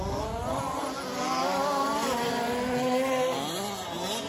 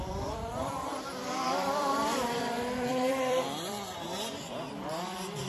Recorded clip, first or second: first